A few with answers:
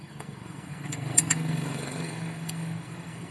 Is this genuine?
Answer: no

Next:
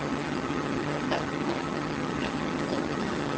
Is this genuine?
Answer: no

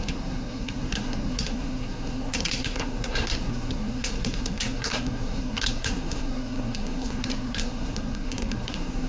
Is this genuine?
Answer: no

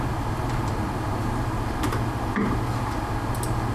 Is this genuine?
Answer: yes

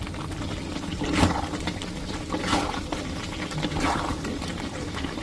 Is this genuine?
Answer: yes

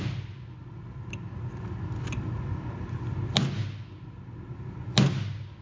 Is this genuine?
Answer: yes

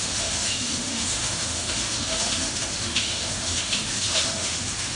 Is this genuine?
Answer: no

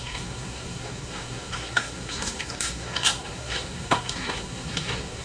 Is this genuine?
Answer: no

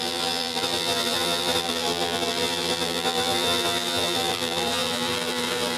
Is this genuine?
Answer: no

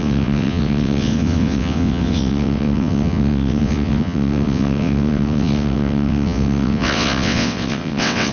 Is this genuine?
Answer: no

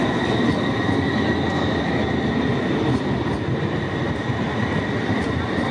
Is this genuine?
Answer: yes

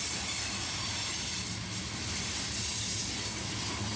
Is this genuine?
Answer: yes